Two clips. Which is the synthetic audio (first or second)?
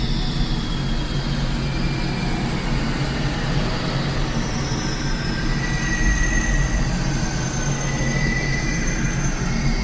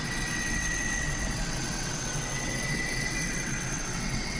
second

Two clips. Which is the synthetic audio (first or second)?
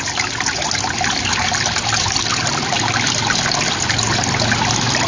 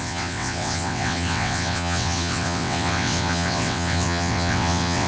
second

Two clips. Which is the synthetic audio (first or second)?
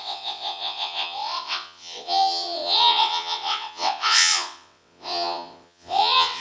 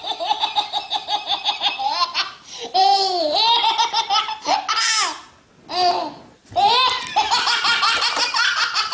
first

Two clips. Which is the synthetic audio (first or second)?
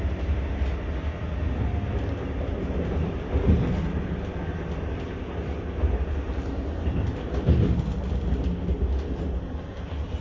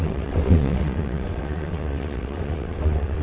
second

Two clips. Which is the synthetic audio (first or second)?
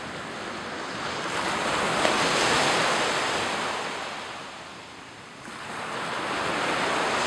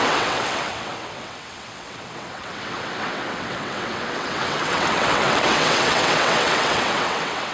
second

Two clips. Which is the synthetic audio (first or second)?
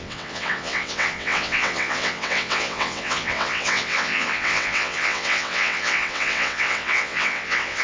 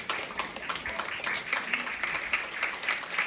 first